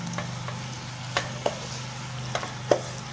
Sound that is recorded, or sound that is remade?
recorded